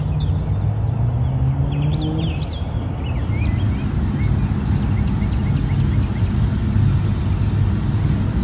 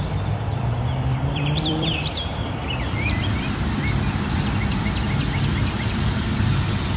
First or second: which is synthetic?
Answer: second